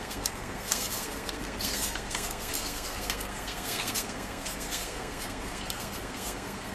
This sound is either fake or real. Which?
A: fake